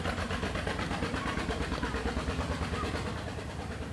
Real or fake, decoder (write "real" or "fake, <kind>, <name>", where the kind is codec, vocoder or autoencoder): real